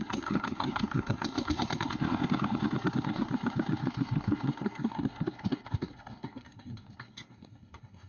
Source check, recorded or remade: remade